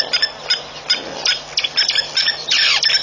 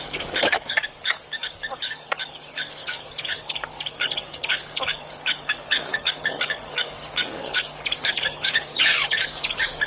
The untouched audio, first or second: first